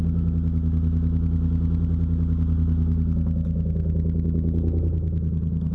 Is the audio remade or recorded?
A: recorded